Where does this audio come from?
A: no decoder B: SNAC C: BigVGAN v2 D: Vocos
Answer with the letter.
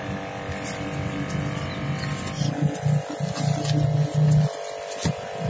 A